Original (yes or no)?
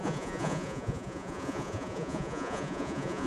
no